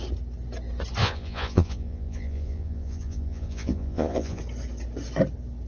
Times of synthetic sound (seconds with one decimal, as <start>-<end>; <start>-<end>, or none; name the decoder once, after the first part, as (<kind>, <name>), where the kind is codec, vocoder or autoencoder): 1.0-4.4 (vocoder, Vocos)